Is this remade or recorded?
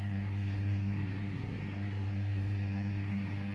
remade